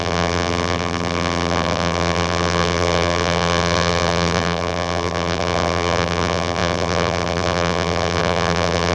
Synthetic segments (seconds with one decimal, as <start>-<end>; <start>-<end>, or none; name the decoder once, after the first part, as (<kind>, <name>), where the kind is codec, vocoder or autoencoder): 0.0-8.9 (vocoder, BigVGAN v2)